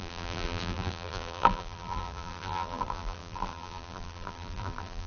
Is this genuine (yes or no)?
no